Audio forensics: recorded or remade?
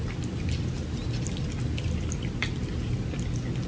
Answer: recorded